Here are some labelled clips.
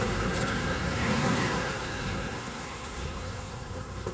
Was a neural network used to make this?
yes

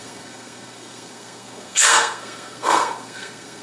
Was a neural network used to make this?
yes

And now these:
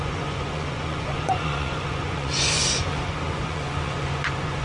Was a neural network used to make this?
yes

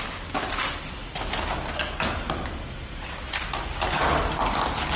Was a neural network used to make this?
no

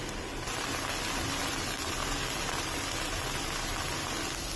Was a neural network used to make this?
no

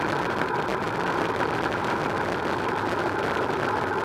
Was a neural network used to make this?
yes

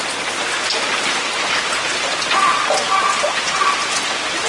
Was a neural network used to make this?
no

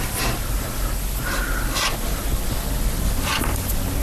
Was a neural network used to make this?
no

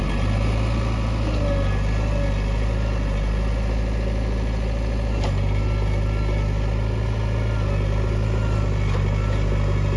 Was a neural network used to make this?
no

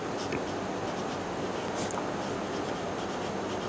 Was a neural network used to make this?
no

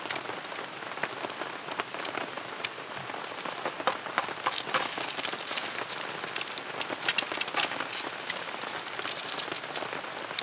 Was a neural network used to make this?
no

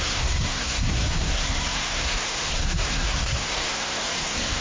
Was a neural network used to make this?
yes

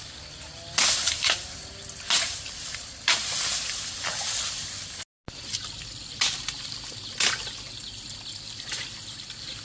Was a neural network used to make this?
no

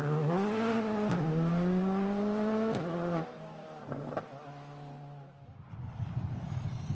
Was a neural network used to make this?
no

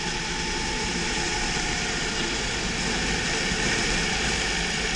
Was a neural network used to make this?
no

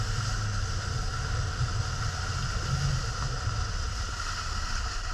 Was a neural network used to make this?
no